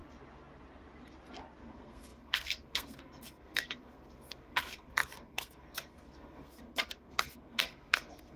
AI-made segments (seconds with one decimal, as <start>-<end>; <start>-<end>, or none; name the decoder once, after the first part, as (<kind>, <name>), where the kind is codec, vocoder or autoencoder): 1.6-8.4 (codec, SNAC)